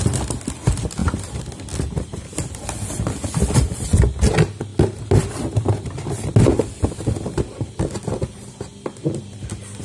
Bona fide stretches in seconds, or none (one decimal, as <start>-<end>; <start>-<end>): 0.0-9.8